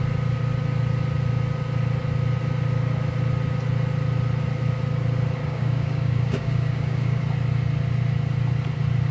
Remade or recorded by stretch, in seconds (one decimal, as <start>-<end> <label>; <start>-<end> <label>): 0.0-5.4 recorded; 5.4-7.2 remade; 7.2-9.1 recorded